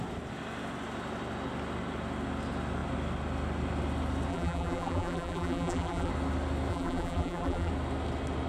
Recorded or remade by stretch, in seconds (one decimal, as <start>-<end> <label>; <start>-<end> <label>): 0.0-4.3 recorded; 4.3-6.1 remade; 6.1-6.7 recorded; 6.7-7.7 remade; 7.7-8.5 recorded